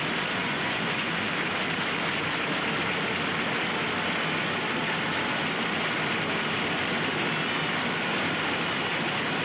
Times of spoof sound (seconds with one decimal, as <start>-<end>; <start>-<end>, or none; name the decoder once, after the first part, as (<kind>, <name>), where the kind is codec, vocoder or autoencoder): 0.4-1.3 (vocoder, Vocos)